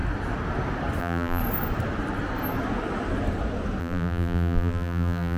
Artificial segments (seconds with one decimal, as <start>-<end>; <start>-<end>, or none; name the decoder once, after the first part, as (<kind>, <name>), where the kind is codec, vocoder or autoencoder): 1.0-1.4 (vocoder, BigVGAN v2); 3.8-5.4